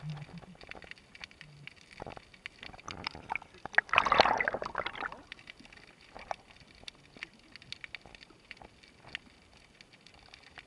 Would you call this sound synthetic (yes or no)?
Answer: no